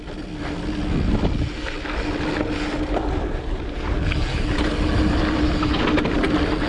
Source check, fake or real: real